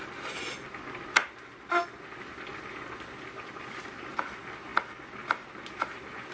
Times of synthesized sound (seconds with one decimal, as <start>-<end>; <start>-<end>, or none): none